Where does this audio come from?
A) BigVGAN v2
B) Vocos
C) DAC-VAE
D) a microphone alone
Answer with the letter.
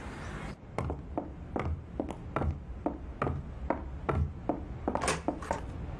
D